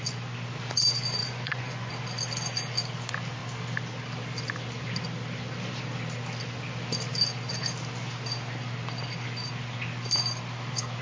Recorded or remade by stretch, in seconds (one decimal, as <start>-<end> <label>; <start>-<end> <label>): 0.0-1.2 recorded; 1.2-1.9 remade; 1.9-11.0 recorded